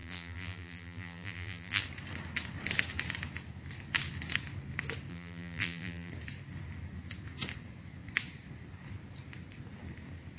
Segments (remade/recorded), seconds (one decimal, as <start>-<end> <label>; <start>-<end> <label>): 0.0-1.8 remade; 1.8-5.1 recorded; 5.1-6.1 remade; 6.1-10.4 recorded

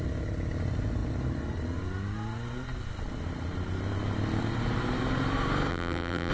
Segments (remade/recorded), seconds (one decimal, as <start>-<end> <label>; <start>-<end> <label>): 0.0-5.7 recorded; 5.7-6.3 remade

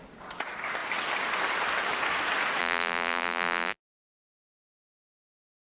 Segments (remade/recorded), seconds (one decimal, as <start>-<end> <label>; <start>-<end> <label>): 0.0-2.6 recorded; 2.6-3.8 remade; 3.8-5.8 recorded

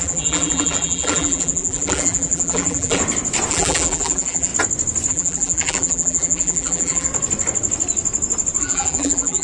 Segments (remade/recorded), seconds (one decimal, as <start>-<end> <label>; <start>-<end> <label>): 0.0-3.0 remade; 3.0-3.5 recorded; 3.5-4.5 remade; 4.5-5.1 recorded; 5.1-7.1 remade; 7.1-8.6 recorded; 8.6-9.4 remade